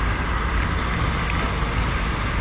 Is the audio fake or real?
real